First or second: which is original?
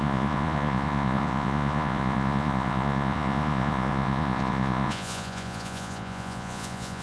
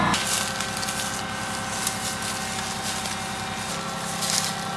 second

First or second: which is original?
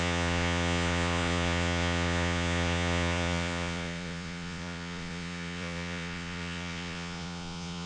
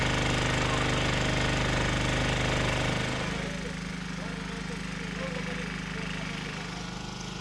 second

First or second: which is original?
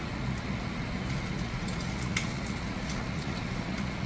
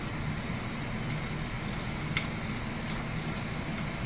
second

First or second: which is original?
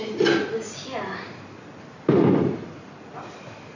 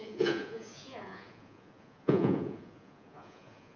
first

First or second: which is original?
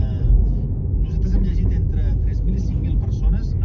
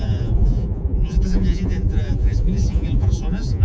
first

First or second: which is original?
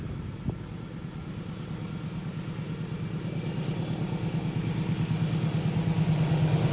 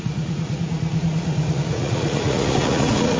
first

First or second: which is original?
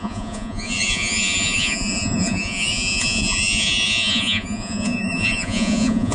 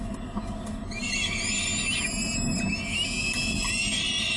second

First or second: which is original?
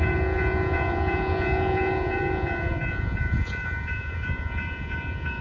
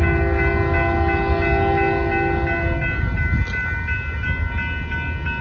second